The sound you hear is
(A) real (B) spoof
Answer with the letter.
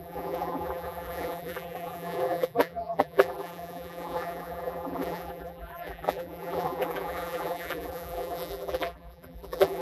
B